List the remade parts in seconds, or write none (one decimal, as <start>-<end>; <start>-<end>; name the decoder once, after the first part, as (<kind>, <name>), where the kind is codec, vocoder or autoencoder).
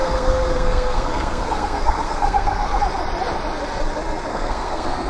0.0-2.8 (codec, SNAC); 4.3-5.1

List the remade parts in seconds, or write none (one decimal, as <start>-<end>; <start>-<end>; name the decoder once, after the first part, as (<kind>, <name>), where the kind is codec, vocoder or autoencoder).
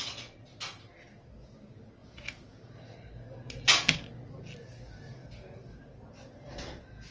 2.0-2.6 (vocoder, Vocos)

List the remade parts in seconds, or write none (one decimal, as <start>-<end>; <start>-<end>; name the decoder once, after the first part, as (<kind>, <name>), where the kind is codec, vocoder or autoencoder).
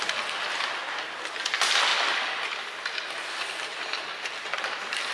0.0-0.8 (vocoder, BigVGAN v2); 1.4-1.9; 3.3-5.1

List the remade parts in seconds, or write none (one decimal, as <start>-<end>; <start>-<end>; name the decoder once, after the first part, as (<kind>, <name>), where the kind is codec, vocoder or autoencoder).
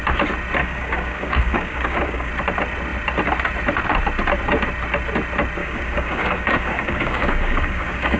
0.6-2.3 (codec, DAC); 5.6-8.2